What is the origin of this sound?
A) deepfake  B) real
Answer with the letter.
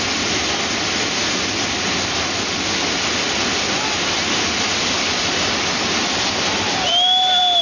B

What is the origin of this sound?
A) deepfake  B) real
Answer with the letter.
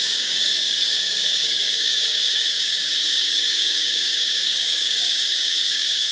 A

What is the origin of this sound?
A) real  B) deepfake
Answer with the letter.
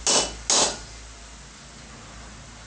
A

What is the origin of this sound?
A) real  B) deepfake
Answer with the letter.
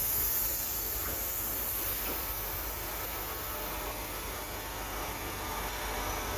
A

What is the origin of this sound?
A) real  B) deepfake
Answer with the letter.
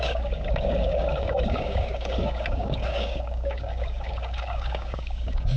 B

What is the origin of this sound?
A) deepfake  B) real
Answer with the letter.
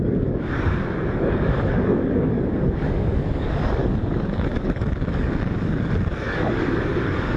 A